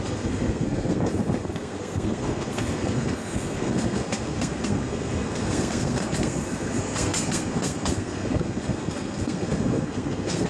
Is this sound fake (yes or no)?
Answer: yes